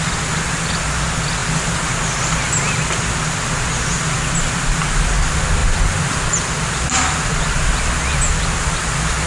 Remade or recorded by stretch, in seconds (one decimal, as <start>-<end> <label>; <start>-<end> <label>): 0.0-9.3 recorded

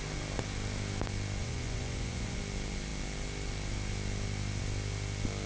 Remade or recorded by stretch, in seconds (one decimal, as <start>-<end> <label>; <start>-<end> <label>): 0.0-1.4 recorded; 1.4-2.4 remade; 2.4-5.5 recorded

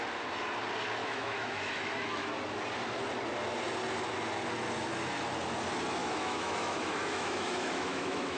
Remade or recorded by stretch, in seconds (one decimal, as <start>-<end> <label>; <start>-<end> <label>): 0.0-1.0 recorded; 1.0-2.3 remade; 2.3-6.0 recorded; 6.0-8.4 remade